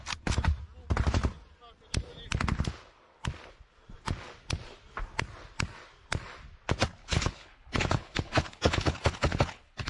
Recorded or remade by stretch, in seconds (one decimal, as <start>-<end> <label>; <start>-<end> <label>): 0.0-7.0 recorded; 7.0-9.9 remade